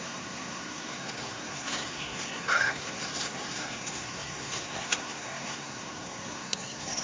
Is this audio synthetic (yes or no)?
yes